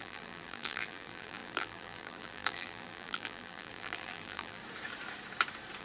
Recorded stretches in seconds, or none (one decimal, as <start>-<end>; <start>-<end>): 4.6-5.8